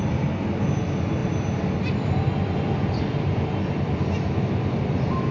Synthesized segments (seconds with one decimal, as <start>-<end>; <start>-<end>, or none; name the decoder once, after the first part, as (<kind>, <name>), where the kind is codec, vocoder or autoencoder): none